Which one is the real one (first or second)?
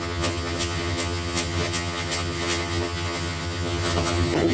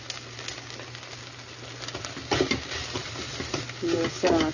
second